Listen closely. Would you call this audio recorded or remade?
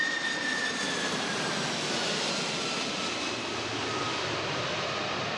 recorded